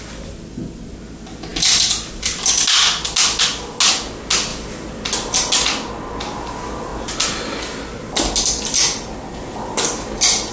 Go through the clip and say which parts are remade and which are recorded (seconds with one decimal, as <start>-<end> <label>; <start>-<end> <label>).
0.0-10.5 recorded